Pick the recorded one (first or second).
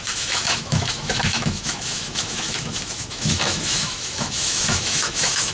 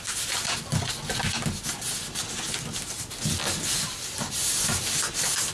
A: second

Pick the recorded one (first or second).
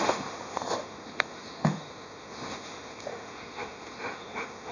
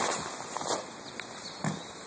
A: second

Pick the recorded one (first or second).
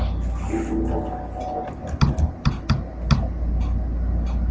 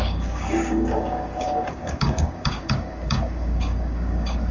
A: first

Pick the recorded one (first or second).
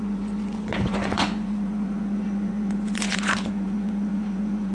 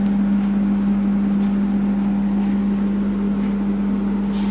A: second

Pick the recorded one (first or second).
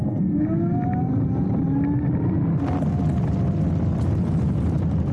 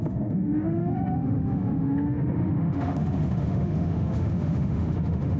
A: first